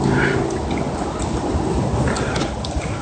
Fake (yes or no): no